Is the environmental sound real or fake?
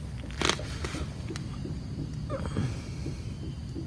real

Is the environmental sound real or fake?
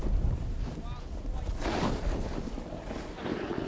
real